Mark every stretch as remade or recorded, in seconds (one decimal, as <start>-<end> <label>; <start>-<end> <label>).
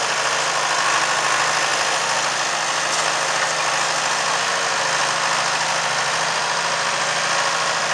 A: 0.0-7.9 recorded